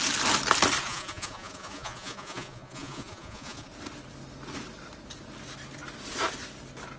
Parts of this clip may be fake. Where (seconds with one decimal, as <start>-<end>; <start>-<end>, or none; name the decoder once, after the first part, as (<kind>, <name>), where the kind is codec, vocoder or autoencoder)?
0.8-3.7 (vocoder, Vocos)